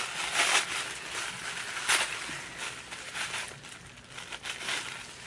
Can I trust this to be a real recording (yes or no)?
yes